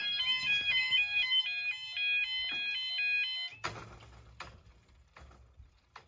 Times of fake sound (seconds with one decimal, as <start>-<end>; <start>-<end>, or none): 0.4-1.4